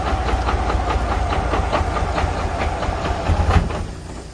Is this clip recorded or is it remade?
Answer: recorded